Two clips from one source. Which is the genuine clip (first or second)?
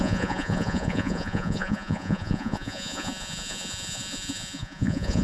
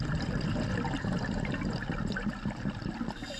second